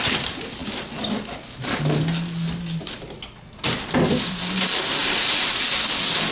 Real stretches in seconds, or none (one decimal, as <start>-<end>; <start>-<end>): 0.0-5.0; 5.5-6.3